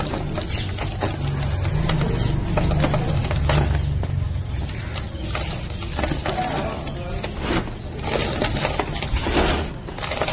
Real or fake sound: real